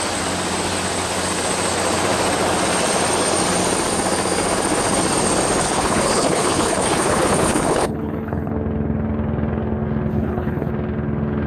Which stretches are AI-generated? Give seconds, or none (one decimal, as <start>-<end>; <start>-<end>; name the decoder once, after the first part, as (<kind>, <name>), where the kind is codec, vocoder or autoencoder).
5.6-8.5 (codec, HILCodec); 10.1-10.7